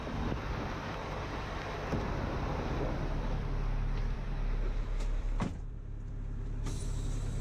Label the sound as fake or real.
fake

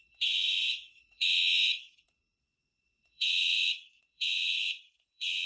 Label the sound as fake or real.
fake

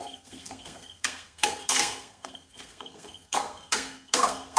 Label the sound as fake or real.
fake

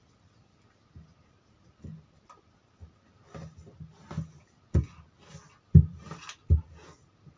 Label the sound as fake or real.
real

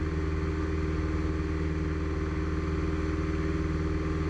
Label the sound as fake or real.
real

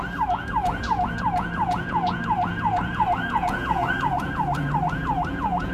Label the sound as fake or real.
fake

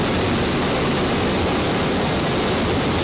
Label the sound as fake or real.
real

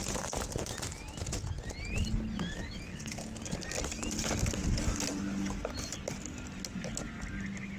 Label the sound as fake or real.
real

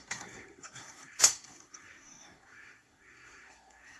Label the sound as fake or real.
fake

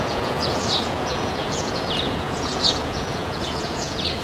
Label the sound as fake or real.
fake